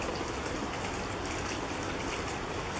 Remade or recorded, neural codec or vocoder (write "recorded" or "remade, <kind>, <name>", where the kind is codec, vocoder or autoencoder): recorded